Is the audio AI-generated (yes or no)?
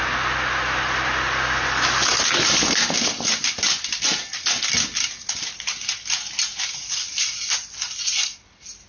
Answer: no